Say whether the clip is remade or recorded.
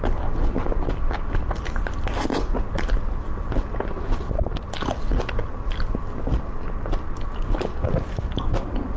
recorded